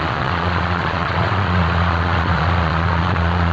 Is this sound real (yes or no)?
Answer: no